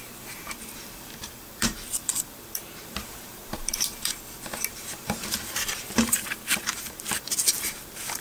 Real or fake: fake